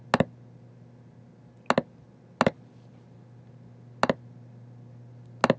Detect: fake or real real